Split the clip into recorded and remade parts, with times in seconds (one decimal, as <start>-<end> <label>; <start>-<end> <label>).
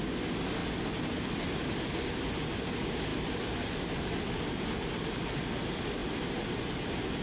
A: 0.0-7.2 recorded